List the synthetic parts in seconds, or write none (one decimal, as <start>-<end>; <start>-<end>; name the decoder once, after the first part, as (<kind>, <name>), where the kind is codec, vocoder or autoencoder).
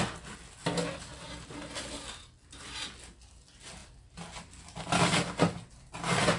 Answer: none